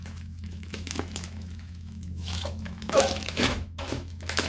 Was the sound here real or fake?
fake